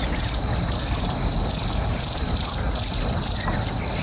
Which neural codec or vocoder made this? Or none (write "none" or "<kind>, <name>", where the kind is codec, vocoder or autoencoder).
none